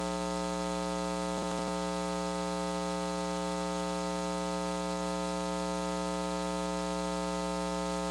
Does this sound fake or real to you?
real